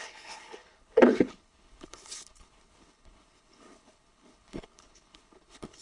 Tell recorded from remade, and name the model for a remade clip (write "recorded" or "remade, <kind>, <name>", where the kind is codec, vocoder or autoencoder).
remade, codec, HILCodec